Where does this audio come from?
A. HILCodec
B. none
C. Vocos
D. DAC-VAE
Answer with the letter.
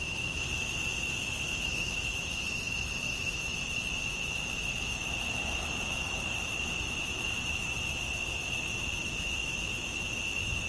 D